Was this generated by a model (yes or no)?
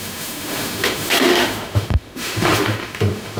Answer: yes